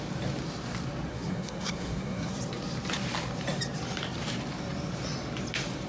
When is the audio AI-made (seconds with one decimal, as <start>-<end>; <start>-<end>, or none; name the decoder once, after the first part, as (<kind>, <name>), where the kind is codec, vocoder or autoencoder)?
1.1-2.3 (codec, SNAC)